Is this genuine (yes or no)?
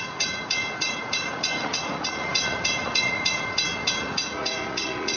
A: no